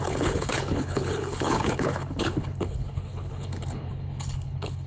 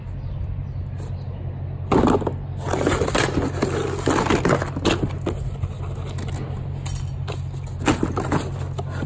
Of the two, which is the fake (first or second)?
first